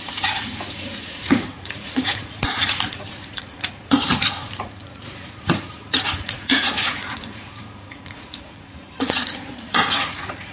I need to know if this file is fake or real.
fake